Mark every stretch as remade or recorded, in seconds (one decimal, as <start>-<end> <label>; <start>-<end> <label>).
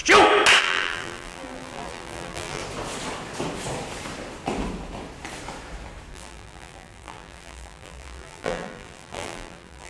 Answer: 0.0-0.6 recorded; 0.6-2.6 remade; 2.6-6.1 recorded; 6.1-9.9 remade